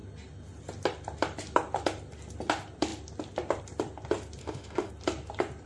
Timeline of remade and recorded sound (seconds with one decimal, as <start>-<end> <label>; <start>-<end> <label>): 0.0-4.4 recorded; 4.4-4.9 remade; 4.9-5.7 recorded